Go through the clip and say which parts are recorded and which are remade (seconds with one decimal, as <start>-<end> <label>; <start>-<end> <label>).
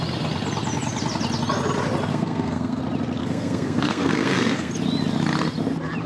0.0-2.1 recorded; 2.1-2.8 remade; 2.8-3.2 recorded; 3.2-4.7 remade; 4.7-6.1 recorded